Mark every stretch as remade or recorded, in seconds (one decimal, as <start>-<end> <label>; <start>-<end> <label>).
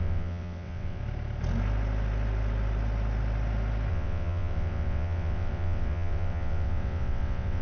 0.0-1.0 remade; 1.0-3.9 recorded; 3.9-7.6 remade